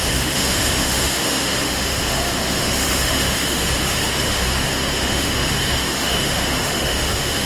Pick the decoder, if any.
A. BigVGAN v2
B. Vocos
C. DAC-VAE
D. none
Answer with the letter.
C